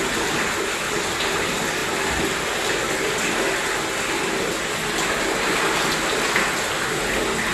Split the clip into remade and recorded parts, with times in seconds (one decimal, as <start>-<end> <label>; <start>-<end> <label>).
0.0-7.5 recorded

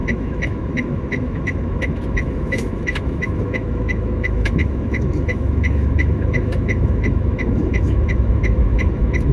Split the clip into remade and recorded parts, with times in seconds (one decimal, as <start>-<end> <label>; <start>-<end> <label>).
0.0-9.3 remade

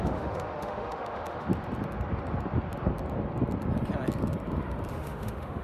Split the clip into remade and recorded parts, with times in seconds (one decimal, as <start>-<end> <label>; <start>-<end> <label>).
0.0-1.5 remade; 1.5-4.9 recorded; 4.9-5.6 remade

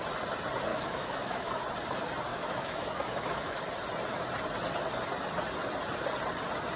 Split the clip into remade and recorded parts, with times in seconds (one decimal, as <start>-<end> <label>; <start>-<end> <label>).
0.0-0.7 recorded; 0.7-1.5 remade; 1.5-2.3 recorded; 2.3-3.6 remade; 3.6-6.8 recorded

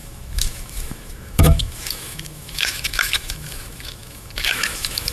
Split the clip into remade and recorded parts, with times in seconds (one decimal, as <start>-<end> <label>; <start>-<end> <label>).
0.0-5.1 remade

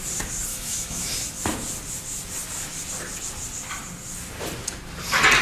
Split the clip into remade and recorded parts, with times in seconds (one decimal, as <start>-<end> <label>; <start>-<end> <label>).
0.0-0.5 recorded; 0.5-1.1 remade; 1.1-5.4 recorded

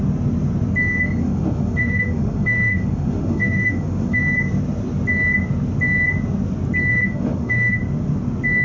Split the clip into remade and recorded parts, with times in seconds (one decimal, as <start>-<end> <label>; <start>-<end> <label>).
0.0-1.2 recorded; 1.2-4.2 remade; 4.2-6.9 recorded; 6.9-7.8 remade; 7.8-8.6 recorded